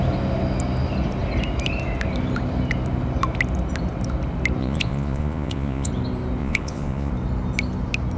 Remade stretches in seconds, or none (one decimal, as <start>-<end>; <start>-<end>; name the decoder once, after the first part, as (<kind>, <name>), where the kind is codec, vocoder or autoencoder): 4.6-5.9 (vocoder, Vocos); 6.4-7.1